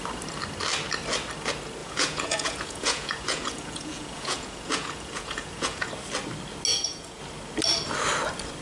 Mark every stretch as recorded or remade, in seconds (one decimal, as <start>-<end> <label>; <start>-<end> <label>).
0.0-1.8 recorded; 1.8-5.9 remade; 5.9-6.7 recorded; 6.7-7.2 remade; 7.2-8.6 recorded